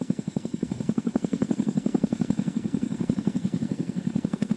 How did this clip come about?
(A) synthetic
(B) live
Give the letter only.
A